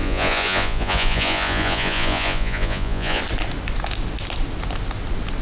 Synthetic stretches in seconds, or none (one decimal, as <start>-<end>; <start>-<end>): 0.0-3.2